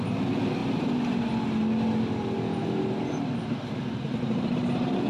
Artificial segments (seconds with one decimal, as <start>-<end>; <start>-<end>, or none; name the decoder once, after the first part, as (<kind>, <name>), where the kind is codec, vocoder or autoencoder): 0.6-1.2 (vocoder, BigVGAN v2); 2.6-5.1